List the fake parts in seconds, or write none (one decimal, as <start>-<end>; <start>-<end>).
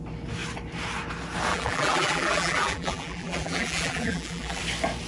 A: 1.5-4.6